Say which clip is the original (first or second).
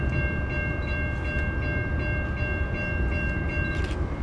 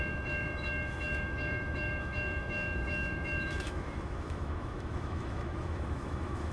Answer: first